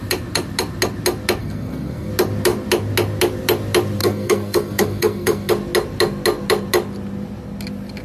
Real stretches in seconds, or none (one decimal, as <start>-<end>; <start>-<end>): 0.0-1.4; 2.1-4.0; 5.5-8.0